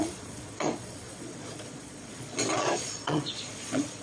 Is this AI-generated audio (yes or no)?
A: yes